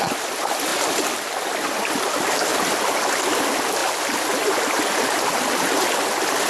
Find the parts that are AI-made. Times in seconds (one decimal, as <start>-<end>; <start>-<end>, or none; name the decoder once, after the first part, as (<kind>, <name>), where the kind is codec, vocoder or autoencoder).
none